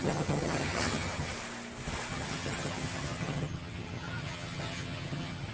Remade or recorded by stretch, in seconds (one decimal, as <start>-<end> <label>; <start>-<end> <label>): 0.0-1.3 remade; 1.3-2.1 recorded; 2.1-5.5 remade